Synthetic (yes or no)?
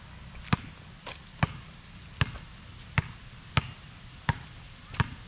no